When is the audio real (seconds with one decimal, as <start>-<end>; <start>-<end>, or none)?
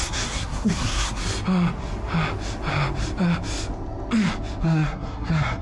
1.2-4.6